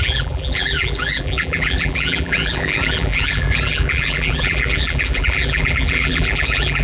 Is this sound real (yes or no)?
no